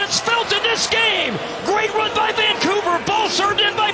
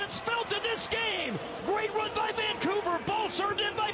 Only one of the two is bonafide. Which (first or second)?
first